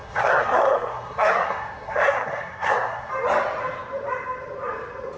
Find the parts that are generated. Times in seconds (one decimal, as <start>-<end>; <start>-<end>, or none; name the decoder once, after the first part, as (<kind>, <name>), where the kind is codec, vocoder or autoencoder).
0.0-3.1 (codec, SNAC)